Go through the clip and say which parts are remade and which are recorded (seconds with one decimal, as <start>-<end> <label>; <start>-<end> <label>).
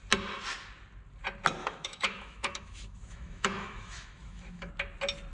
0.0-1.6 recorded; 1.6-4.7 remade; 4.7-5.3 recorded